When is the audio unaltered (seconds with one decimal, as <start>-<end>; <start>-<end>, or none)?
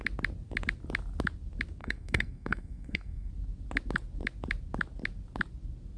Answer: 0.0-1.8; 3.3-6.0